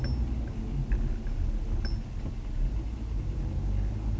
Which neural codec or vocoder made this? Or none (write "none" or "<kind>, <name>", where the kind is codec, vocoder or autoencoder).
none